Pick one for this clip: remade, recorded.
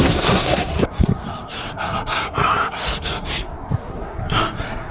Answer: remade